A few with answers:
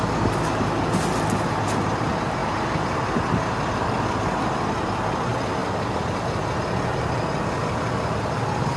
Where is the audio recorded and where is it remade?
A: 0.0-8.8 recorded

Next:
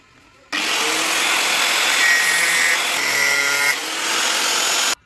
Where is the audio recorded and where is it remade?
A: 0.0-5.1 recorded

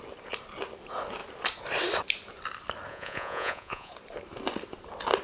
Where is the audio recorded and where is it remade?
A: 0.0-2.9 recorded; 2.9-3.9 remade; 3.9-5.2 recorded

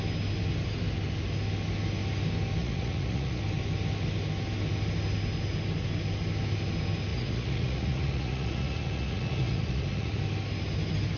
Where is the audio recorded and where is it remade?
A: 0.0-2.6 recorded; 2.6-3.4 remade; 3.4-7.1 recorded; 7.1-10.2 remade; 10.2-11.2 recorded

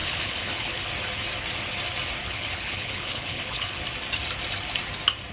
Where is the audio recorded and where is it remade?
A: 0.0-0.9 remade; 0.9-2.2 recorded; 2.2-3.8 remade; 3.8-5.3 recorded

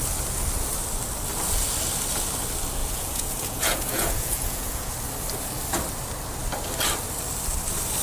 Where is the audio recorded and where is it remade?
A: 0.0-2.8 recorded; 2.8-4.9 remade; 4.9-8.0 recorded

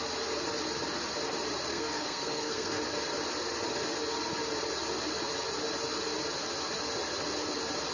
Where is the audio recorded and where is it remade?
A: 0.0-1.7 recorded; 1.7-2.8 remade; 2.8-7.9 recorded